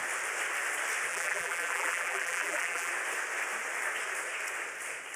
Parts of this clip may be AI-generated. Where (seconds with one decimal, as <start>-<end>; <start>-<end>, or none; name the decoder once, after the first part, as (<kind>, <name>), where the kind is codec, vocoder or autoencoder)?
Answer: 1.1-2.9 (vocoder, BigVGAN v2)